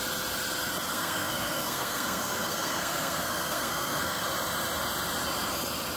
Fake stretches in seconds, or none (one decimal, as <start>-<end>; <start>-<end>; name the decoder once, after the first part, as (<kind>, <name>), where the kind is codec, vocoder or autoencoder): 0.9-4.2 (codec, SNAC)